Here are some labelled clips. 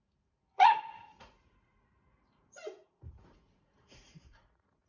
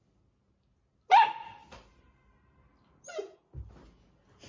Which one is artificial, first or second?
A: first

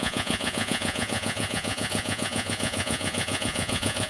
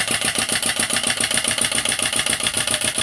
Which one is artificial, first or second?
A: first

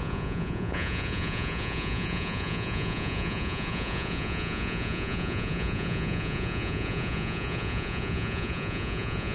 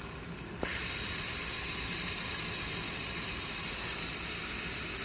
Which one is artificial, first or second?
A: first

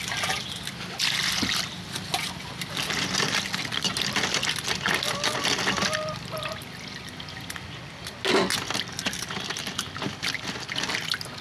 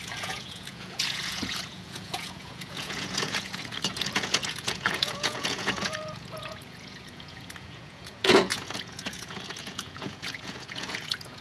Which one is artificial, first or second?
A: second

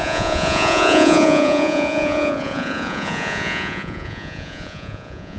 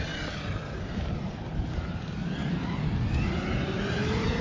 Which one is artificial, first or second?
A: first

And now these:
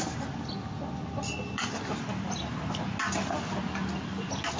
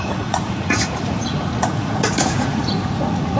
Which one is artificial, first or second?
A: second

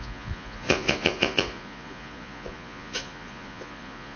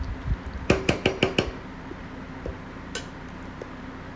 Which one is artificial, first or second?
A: first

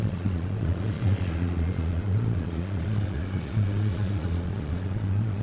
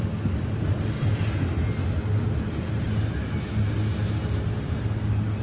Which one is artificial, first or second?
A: first